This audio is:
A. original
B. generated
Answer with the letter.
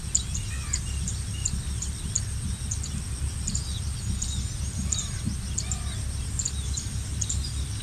A